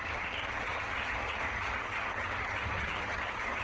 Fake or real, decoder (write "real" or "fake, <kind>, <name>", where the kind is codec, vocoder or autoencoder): fake, vocoder, HiFi-GAN